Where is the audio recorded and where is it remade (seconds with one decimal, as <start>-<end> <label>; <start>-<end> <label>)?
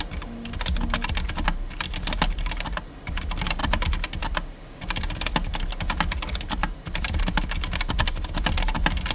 0.0-9.1 recorded